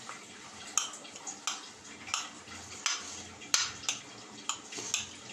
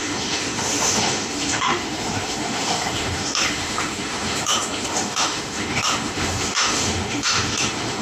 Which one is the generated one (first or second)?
second